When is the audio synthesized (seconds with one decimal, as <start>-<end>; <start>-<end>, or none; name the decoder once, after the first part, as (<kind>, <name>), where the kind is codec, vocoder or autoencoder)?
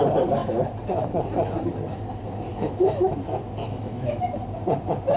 2.5-3.1 (autoencoder, DAC-VAE); 3.6-4.2